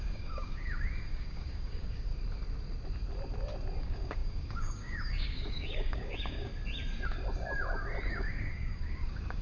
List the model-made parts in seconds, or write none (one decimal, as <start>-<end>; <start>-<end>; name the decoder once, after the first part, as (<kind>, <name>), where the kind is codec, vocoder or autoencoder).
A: 0.0-2.1 (codec, DAC); 3.8-6.5; 8.1-9.4